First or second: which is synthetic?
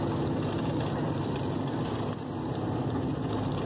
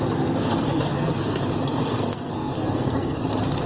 second